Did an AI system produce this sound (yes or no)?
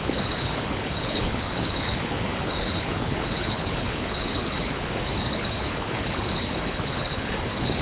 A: yes